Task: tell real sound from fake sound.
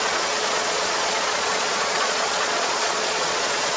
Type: fake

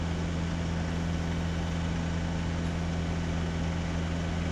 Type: real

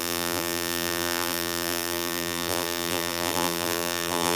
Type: fake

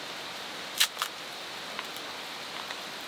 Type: real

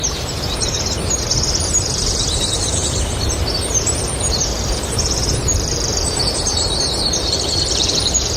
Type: fake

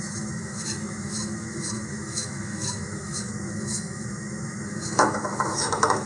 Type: fake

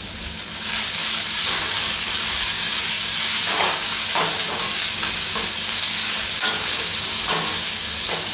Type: fake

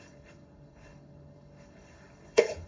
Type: fake